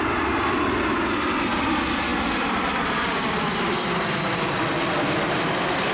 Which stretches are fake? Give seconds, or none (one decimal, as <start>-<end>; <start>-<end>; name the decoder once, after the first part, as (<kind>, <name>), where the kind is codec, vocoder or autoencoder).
none